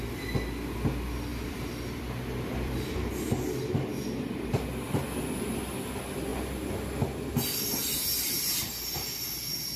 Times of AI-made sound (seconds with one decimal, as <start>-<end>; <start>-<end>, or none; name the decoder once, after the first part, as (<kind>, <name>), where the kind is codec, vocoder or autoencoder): 1.3-3.2 (vocoder, BigVGAN v2); 8.0-8.7